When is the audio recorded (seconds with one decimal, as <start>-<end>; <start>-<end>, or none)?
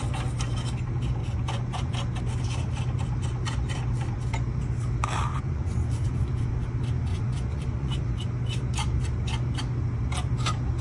0.0-1.2; 1.9-5.3; 6.5-7.1; 8.0-10.8